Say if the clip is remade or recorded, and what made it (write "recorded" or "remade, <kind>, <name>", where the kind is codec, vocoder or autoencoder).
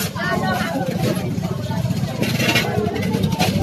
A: recorded